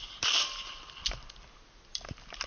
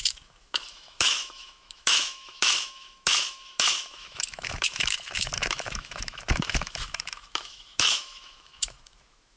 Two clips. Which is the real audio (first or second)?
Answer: first